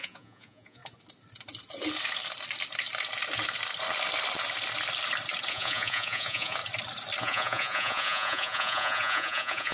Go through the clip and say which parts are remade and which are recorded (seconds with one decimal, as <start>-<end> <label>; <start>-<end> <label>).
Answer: 0.0-0.8 remade; 0.8-5.5 recorded; 5.5-6.6 remade; 6.6-7.2 recorded; 7.2-9.7 remade